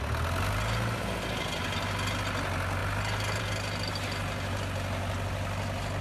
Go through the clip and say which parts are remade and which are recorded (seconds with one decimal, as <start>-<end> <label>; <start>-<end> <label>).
0.0-6.0 recorded